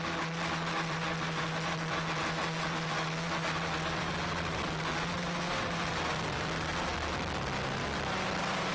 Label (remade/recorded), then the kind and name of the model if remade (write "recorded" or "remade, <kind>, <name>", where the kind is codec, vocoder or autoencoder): recorded